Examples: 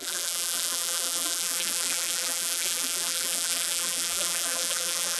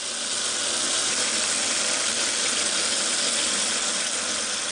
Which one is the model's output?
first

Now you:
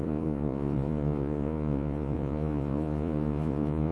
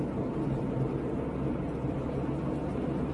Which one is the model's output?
first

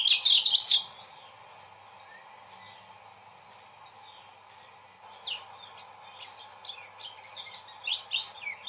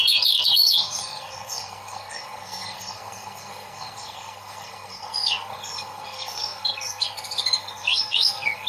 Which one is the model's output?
second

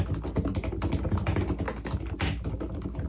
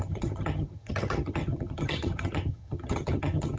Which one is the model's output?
second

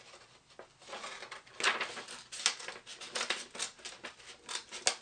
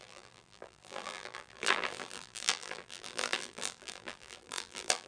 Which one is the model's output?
second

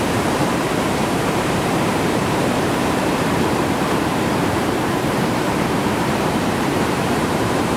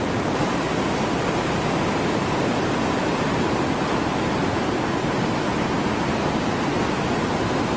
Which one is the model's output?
first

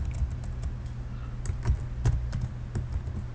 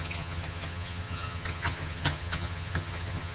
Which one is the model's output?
second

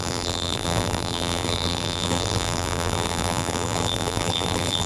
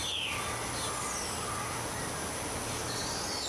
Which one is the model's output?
first